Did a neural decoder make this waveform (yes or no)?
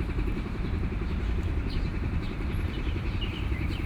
yes